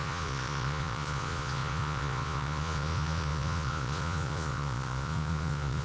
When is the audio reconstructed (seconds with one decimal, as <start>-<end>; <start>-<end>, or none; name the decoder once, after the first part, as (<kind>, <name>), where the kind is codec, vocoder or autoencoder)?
0.0-5.8 (vocoder, Vocos)